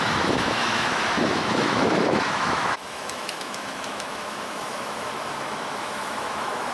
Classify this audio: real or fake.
fake